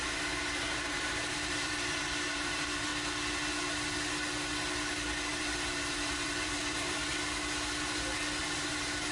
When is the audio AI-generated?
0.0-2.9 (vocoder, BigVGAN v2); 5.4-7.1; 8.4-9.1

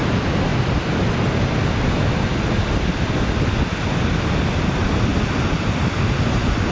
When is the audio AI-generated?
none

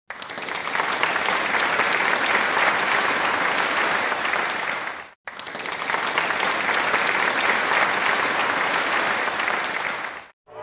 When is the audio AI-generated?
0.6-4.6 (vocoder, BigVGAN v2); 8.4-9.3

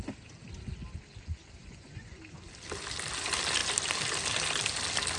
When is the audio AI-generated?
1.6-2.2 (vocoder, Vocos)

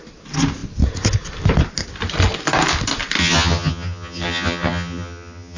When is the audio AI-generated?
3.2-5.6 (vocoder, HiFi-GAN)

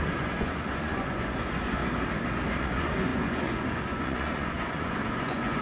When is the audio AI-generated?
0.0-1.8 (vocoder, Vocos); 2.6-5.6